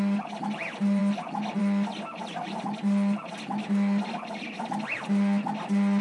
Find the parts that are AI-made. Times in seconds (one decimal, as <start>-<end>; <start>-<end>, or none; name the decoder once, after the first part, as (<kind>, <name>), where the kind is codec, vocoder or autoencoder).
none